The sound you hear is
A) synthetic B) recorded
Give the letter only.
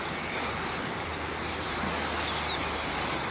B